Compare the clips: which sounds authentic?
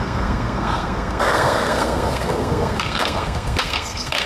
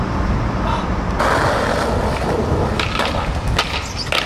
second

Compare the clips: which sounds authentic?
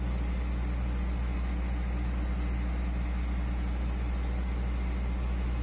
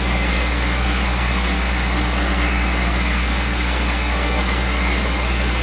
first